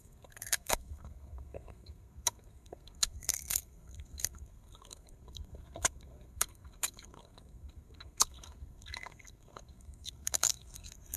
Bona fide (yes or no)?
no